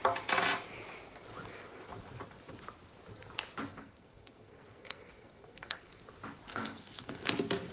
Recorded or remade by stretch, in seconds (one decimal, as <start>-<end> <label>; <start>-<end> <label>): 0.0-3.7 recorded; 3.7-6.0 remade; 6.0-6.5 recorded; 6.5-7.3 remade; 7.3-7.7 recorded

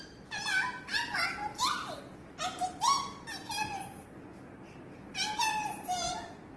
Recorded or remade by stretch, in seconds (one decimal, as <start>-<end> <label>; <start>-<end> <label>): 0.0-6.6 recorded

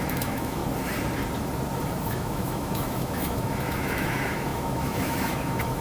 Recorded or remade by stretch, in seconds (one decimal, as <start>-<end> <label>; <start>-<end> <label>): 0.0-0.6 remade; 0.6-2.1 recorded; 2.1-5.8 remade